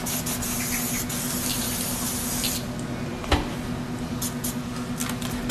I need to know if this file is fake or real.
real